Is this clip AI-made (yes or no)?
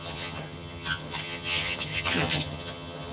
yes